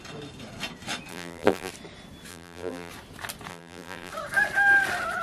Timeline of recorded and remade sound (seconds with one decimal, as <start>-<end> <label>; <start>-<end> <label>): 0.0-1.1 recorded; 1.1-1.7 remade; 1.7-2.3 recorded; 2.3-2.9 remade; 2.9-3.5 recorded; 3.5-4.1 remade; 4.1-5.2 recorded

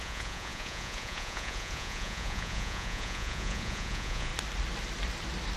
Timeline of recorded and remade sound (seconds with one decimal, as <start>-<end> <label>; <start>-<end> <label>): 0.0-4.3 remade; 4.3-5.6 recorded

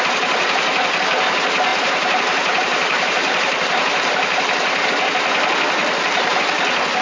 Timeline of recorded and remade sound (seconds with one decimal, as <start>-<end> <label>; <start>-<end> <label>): 0.0-1.7 recorded; 1.7-4.9 remade; 4.9-5.8 recorded; 5.8-6.4 remade; 6.4-7.0 recorded

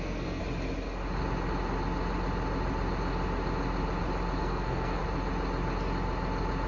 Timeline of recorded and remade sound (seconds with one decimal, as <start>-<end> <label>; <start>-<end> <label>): 0.0-0.4 remade; 0.4-4.4 recorded; 4.4-5.0 remade; 5.0-6.7 recorded

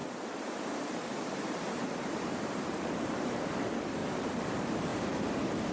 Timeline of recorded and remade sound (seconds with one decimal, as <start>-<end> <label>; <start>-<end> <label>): 0.0-3.4 remade; 3.4-4.0 recorded; 4.0-4.5 remade; 4.5-4.9 recorded; 4.9-5.7 remade

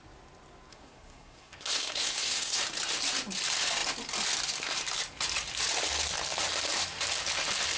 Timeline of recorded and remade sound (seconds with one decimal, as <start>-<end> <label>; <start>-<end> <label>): 0.0-0.7 recorded; 0.7-2.6 remade; 2.6-7.8 recorded

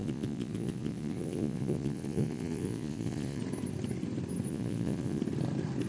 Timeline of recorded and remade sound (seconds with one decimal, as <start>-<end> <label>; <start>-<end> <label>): 0.0-3.4 remade; 3.4-4.5 recorded; 4.5-5.2 remade; 5.2-5.9 recorded

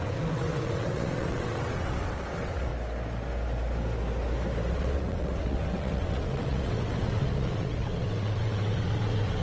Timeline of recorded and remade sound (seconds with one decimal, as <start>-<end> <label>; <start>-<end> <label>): 0.0-2.7 remade; 2.7-4.7 recorded; 4.7-9.4 remade